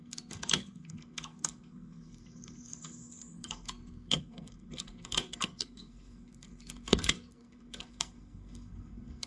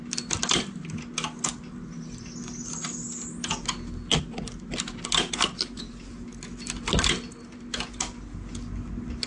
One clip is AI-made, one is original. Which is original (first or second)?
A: second